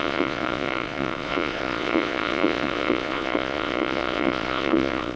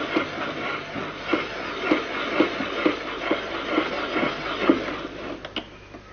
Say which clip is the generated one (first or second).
first